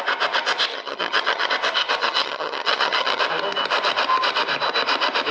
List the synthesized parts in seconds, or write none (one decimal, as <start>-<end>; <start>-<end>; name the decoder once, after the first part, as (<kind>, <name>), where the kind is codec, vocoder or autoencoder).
0.7-1.5 (vocoder, HiFi-GAN); 2.0-3.2